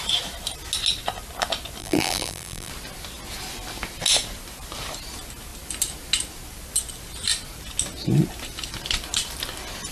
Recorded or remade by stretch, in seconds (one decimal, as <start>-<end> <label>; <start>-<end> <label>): 0.0-1.8 recorded; 1.8-2.7 remade; 2.7-9.9 recorded